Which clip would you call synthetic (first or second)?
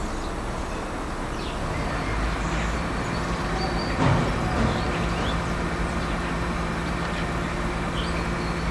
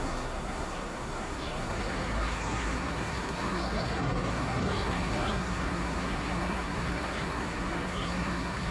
second